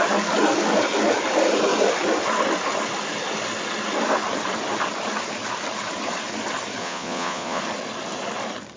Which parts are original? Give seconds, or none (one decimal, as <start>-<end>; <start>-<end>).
0.0-6.8; 7.6-8.8